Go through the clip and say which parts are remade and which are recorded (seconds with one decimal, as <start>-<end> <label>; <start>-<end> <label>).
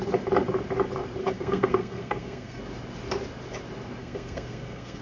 0.0-1.2 recorded; 1.2-2.6 remade; 2.6-4.0 recorded; 4.0-5.0 remade